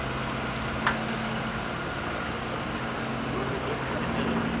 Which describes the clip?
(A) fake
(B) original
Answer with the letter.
B